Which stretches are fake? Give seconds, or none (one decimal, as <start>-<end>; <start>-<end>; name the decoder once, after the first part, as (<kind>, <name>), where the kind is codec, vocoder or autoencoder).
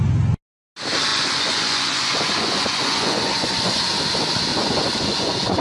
1.1-3.8 (vocoder, Vocos); 4.5-5.6